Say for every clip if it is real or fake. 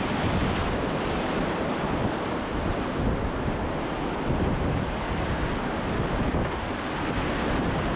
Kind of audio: real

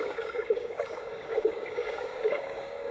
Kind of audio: fake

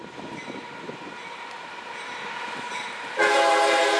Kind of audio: real